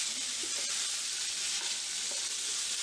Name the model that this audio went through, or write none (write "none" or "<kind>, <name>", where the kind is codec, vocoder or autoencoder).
vocoder, BigVGAN v2